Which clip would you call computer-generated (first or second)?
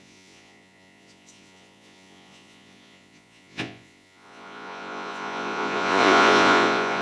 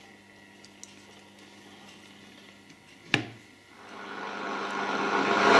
first